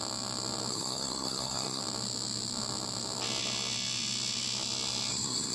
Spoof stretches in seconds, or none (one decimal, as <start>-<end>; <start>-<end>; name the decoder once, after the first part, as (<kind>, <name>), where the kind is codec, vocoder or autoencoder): 0.7-1.8 (codec, SNAC); 5.1-5.5